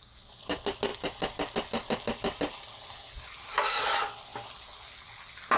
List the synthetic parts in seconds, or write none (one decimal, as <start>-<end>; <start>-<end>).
none